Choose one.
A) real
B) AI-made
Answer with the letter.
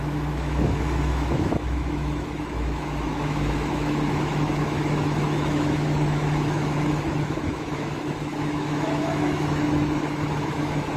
B